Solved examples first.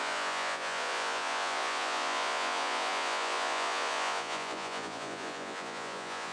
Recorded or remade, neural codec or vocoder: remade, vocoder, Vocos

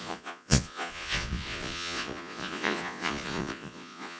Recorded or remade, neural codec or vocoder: remade, vocoder, Vocos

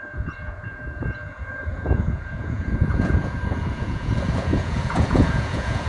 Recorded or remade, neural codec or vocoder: remade, vocoder, Vocos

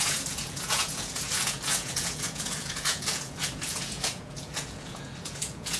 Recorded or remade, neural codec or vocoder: remade, vocoder, Vocos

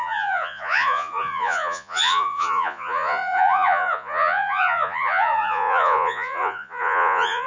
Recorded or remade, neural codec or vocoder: remade, vocoder, Vocos